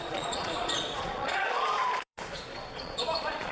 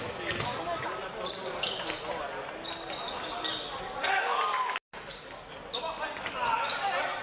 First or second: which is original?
second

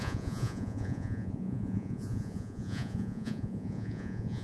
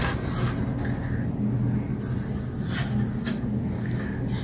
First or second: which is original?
second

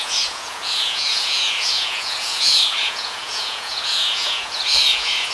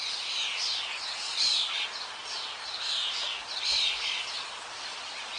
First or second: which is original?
second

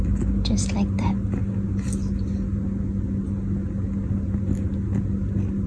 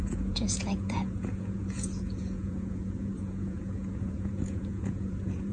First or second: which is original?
first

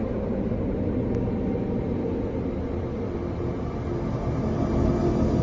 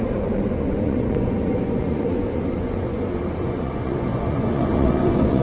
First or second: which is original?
first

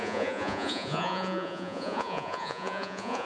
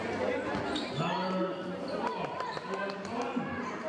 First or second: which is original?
second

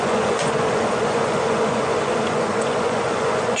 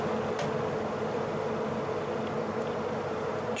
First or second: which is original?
second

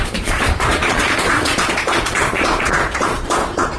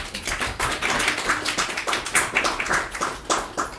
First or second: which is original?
second